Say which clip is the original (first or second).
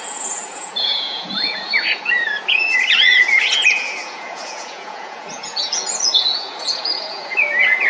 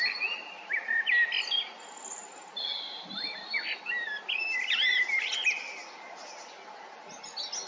second